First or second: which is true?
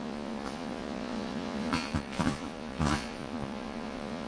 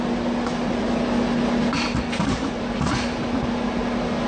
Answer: second